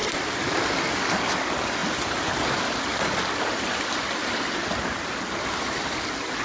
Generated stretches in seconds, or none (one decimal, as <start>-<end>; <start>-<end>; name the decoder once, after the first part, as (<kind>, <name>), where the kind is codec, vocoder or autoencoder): 1.1-1.8 (vocoder, BigVGAN v2); 5.6-6.4